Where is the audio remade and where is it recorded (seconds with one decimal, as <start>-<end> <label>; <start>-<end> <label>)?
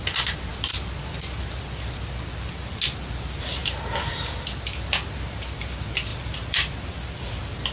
0.0-3.6 recorded; 3.6-4.1 remade; 4.1-6.1 recorded; 6.1-6.9 remade; 6.9-7.7 recorded